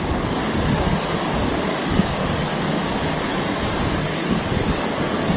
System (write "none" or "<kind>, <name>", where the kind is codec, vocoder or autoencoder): codec, DAC